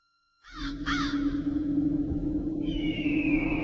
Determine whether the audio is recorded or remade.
remade